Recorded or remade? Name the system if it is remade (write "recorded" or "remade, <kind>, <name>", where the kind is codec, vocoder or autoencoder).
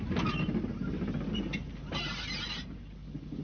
recorded